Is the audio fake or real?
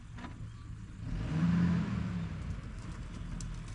real